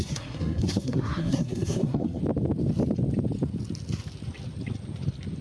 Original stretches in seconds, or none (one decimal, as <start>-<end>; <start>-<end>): 2.2-5.4